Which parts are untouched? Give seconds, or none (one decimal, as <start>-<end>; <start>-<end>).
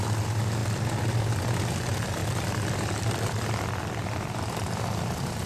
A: 0.0-2.2